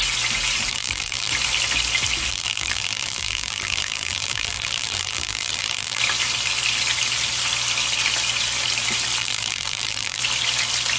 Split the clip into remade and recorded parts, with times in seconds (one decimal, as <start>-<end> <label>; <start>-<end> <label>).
0.0-0.7 recorded; 0.7-1.3 remade; 1.3-2.3 recorded; 2.3-6.0 remade; 6.0-9.2 recorded; 9.2-10.2 remade; 10.2-11.0 recorded